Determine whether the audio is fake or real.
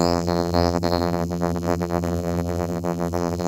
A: fake